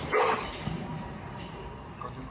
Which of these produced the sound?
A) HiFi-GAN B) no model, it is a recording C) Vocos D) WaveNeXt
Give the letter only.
B